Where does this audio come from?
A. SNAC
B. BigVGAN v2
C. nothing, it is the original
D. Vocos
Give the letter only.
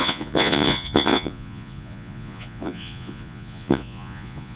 D